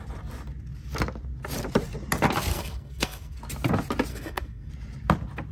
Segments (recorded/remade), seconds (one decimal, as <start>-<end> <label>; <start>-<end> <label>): 0.0-2.5 recorded; 2.5-3.4 remade; 3.4-4.1 recorded; 4.1-4.7 remade; 4.7-5.5 recorded